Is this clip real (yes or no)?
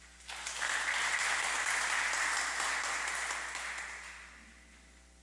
yes